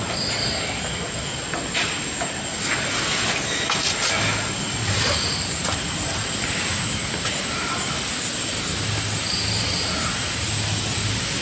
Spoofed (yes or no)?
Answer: no